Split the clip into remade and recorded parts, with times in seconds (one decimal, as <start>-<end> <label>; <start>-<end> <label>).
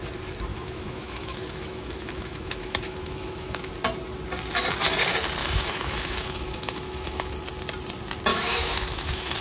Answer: 0.0-0.5 recorded; 0.5-3.7 remade; 3.7-5.4 recorded; 5.4-7.3 remade; 7.3-8.3 recorded; 8.3-9.4 remade